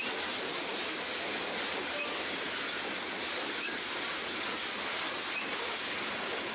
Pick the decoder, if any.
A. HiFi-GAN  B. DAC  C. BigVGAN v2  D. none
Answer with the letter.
D